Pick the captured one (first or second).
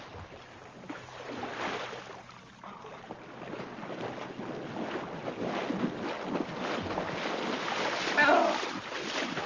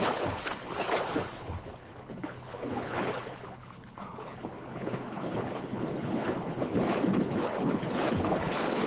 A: first